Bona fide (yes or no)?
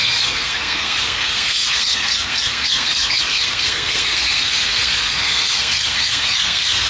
no